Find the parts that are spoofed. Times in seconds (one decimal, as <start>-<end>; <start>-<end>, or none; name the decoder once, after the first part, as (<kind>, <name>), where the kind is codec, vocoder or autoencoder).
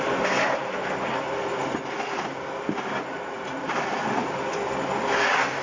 none